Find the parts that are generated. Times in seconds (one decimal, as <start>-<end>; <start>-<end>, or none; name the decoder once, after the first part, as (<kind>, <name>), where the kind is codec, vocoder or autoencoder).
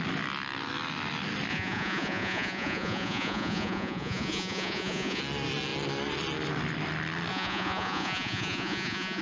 1.5-5.2 (vocoder, Vocos); 7.3-9.2